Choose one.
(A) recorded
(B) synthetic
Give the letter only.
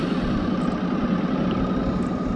A